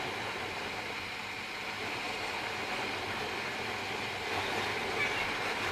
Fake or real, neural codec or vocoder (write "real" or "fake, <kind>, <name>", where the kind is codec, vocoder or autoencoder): real